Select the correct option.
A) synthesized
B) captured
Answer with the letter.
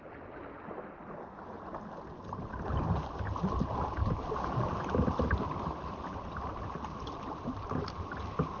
B